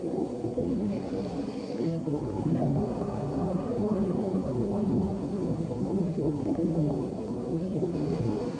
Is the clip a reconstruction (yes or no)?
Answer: yes